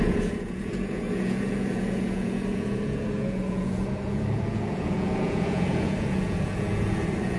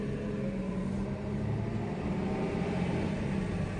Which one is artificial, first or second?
first